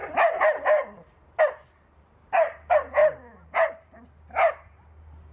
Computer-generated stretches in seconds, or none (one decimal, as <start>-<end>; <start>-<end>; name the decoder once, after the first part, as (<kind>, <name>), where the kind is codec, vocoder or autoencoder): 3.0-3.9 (vocoder, BigVGAN v2)